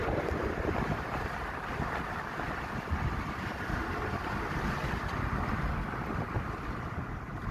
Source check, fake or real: real